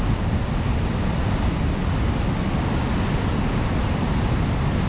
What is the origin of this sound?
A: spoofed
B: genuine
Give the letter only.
B